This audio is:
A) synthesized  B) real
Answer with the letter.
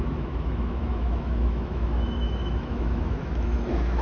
A